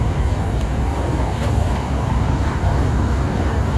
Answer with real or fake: fake